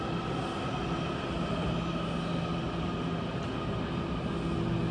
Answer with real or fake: real